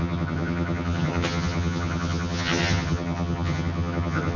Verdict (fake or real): fake